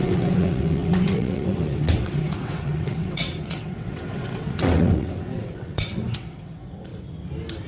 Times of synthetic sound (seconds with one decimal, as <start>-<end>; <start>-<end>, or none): 0.0-6.9